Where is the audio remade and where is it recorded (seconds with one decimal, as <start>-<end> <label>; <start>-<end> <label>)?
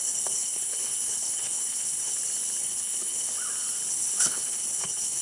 0.0-2.1 remade; 2.1-2.6 recorded; 2.6-3.3 remade; 3.3-3.9 recorded; 3.9-5.2 remade